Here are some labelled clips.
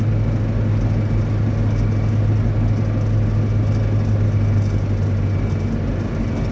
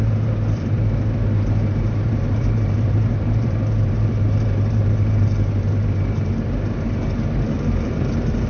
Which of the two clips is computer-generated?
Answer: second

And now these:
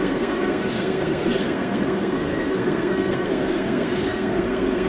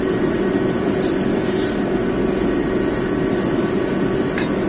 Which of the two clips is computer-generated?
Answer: first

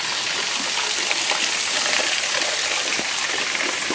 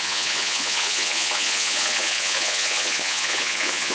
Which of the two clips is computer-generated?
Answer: second